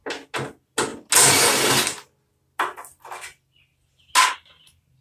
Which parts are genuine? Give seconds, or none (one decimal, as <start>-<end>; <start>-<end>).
0.0-5.0